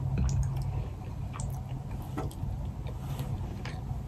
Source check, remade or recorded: recorded